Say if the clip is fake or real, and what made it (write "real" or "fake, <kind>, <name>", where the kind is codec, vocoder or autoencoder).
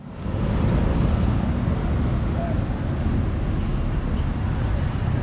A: real